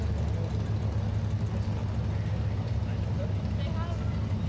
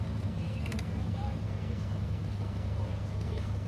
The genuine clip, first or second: first